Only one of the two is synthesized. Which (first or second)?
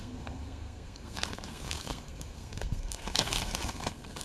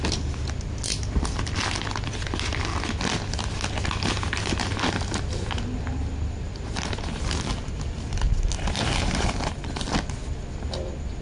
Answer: first